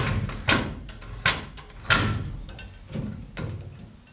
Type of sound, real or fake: real